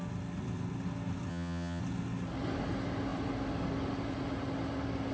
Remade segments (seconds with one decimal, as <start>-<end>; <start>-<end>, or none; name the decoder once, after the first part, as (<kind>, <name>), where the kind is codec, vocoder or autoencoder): 1.3-1.8 (vocoder, HiFi-GAN)